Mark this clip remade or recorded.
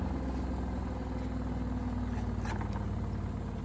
recorded